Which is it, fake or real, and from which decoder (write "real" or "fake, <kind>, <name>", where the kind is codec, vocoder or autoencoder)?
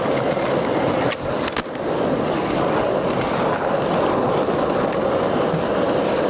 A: real